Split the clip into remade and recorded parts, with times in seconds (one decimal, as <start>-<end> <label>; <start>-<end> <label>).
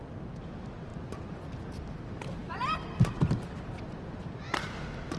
0.0-5.2 recorded